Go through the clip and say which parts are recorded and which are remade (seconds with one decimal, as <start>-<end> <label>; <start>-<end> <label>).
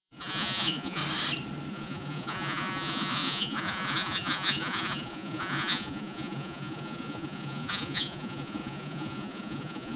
0.0-1.0 remade; 1.0-1.7 recorded; 1.7-10.0 remade